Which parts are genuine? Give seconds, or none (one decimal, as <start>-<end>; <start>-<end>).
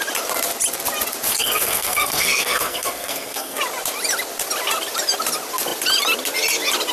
0.0-1.3; 3.6-6.9